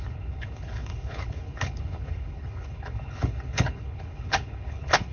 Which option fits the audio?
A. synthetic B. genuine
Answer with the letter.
A